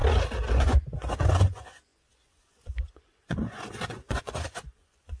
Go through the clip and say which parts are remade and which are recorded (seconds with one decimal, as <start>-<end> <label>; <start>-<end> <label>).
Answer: 0.0-0.6 recorded; 0.6-5.2 remade